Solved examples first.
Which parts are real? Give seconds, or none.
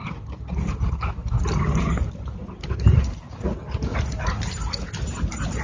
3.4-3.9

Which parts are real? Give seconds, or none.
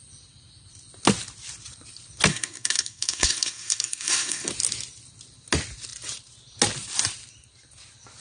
0.0-2.3; 4.5-8.2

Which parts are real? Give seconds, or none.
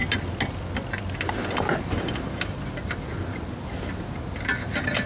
0.0-5.1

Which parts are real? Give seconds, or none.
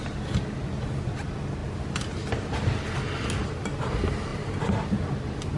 0.0-5.6